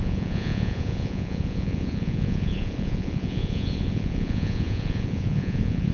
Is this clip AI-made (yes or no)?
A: yes